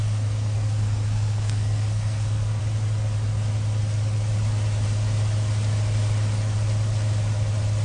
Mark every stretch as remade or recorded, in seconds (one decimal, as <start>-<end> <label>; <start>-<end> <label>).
0.0-2.6 remade; 2.6-7.8 recorded